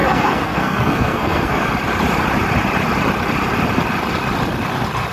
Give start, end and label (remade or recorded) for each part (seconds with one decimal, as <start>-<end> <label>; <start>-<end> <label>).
0.0-1.7 remade; 1.7-5.1 recorded